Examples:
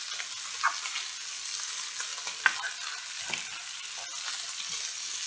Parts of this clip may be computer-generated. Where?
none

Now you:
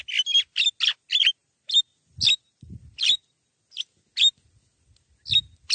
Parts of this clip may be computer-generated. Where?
none